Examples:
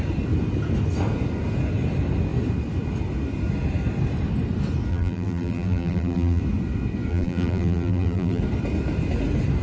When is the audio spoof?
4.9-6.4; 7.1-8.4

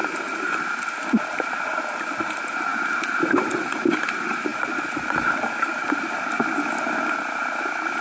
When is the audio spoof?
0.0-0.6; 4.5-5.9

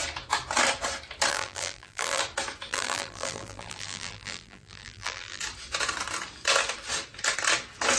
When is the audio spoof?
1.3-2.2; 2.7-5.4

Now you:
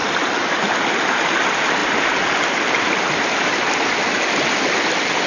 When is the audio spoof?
0.0-1.8

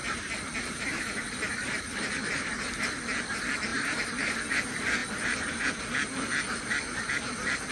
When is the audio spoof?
0.0-2.7; 3.7-4.5; 5.0-5.8